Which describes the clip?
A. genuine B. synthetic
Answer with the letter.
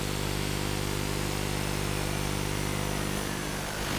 A